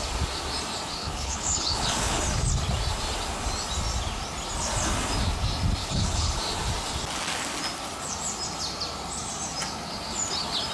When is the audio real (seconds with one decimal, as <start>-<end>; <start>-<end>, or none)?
0.0-1.0; 2.2-5.8; 6.4-10.7